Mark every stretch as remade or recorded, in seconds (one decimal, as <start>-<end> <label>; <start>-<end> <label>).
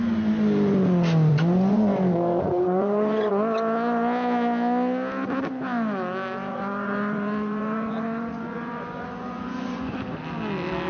0.0-1.3 recorded; 1.3-3.3 remade; 3.3-6.5 recorded; 6.5-9.9 remade; 9.9-10.9 recorded